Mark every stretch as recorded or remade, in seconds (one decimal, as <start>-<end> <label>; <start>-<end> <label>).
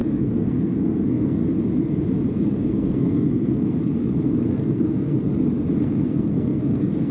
0.0-1.4 remade; 1.4-2.3 recorded; 2.3-5.3 remade; 5.3-5.8 recorded; 5.8-7.1 remade